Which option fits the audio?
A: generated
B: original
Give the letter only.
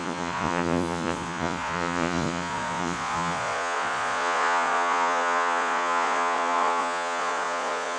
A